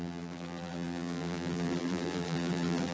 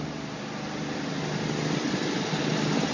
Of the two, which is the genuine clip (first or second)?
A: second